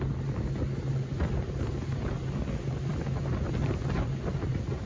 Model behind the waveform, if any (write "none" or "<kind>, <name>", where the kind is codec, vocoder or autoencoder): none